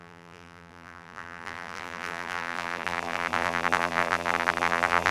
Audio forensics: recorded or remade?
remade